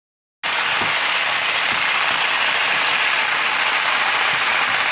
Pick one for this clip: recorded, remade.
recorded